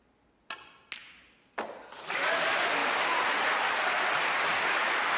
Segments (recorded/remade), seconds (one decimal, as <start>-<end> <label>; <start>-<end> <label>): 0.0-5.2 recorded